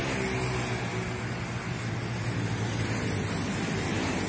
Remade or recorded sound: recorded